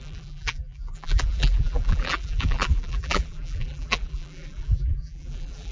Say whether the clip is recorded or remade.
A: remade